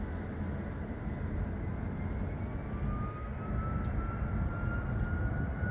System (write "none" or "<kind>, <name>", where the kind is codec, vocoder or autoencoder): none